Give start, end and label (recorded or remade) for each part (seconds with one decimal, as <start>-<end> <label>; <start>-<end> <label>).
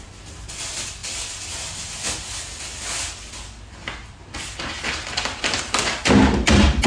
0.0-6.9 recorded